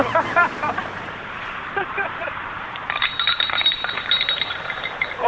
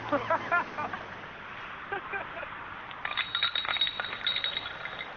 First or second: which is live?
second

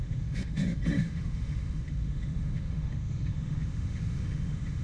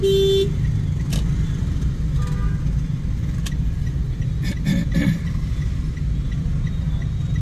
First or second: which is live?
second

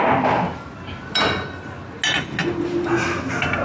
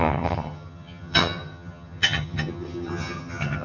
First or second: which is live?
first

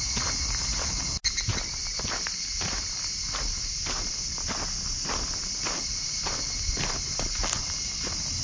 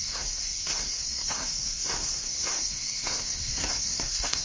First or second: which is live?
first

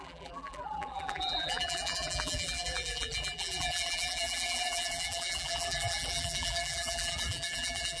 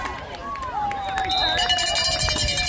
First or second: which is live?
second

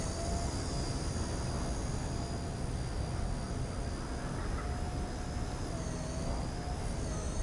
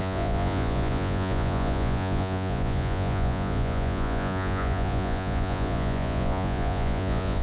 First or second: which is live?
first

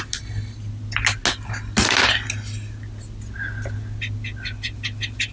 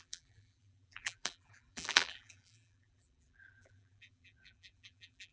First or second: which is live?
first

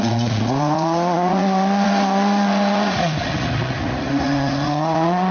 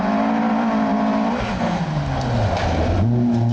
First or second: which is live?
second